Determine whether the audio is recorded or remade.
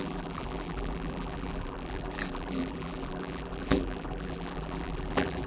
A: remade